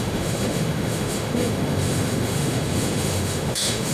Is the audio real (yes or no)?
no